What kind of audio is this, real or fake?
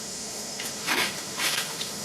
fake